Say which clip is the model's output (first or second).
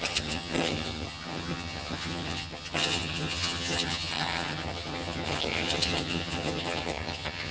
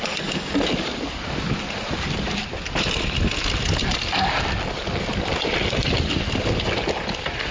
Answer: first